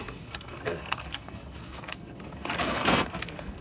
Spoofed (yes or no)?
yes